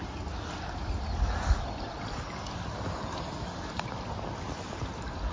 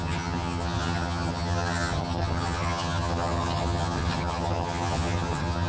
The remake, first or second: second